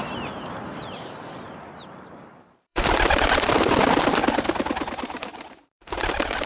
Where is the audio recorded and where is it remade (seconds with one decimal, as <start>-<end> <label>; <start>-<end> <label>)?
0.0-3.9 remade; 3.9-5.3 recorded; 5.3-6.5 remade